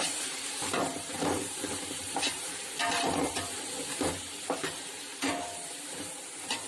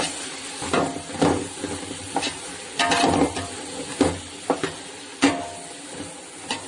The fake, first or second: first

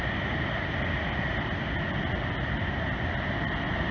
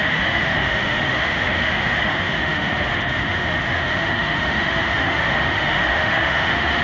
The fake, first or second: second